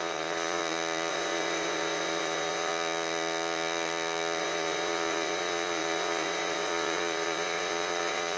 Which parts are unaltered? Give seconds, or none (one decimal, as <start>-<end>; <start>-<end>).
0.6-1.1; 2.7-4.4